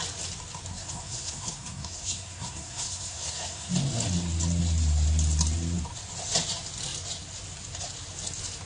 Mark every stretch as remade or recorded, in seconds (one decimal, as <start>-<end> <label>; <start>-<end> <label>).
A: 0.0-0.7 recorded; 0.7-3.7 remade; 3.7-8.7 recorded